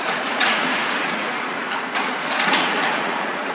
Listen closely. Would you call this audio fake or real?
fake